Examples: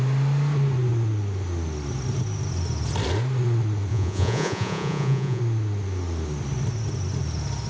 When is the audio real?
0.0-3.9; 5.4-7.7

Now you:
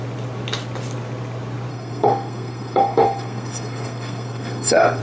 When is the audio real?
0.0-1.7

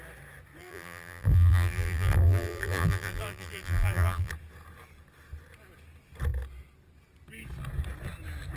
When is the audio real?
0.0-0.6; 4.3-8.6

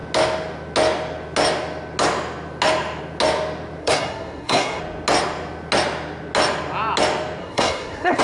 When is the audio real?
0.0-3.8; 4.8-7.4

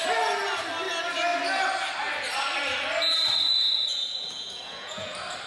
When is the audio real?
0.0-3.5; 5.1-5.5

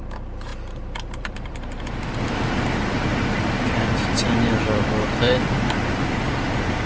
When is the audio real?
none

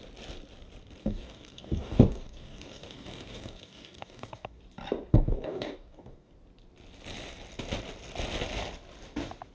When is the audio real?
0.0-1.0; 4.6-5.1; 6.3-9.5